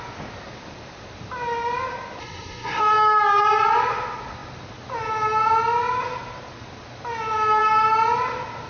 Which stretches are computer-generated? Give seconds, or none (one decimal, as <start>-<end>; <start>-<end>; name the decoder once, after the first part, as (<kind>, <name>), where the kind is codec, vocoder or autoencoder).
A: 2.2-2.8 (codec, SNAC)